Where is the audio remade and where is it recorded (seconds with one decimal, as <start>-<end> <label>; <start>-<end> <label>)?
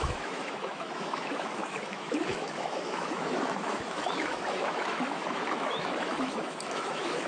0.0-7.3 remade